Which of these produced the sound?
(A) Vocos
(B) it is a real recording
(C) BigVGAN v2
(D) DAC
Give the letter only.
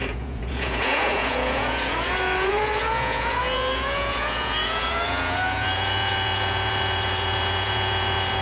A